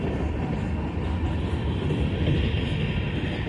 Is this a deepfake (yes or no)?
no